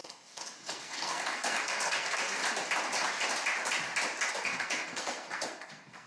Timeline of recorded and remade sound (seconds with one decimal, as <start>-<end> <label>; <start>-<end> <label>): 0.0-2.4 remade; 2.4-4.3 recorded; 4.3-6.1 remade